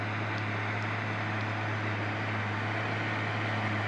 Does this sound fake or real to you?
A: real